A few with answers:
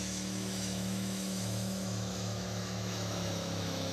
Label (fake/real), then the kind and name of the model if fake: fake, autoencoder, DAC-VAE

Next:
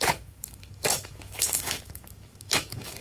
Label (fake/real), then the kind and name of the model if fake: fake, autoencoder, DAC-VAE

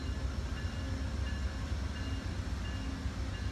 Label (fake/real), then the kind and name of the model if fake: real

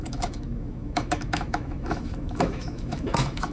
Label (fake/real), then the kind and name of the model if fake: fake, autoencoder, DAC-VAE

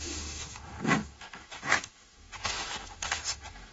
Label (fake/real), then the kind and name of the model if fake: fake, autoencoder, DAC-VAE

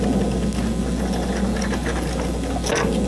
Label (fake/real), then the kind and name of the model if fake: real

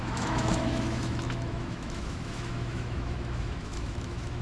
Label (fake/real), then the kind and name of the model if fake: fake, autoencoder, DAC-VAE